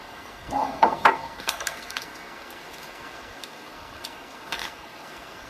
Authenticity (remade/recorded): remade